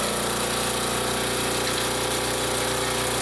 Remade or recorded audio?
recorded